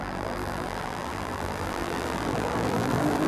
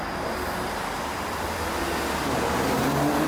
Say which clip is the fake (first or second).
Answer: first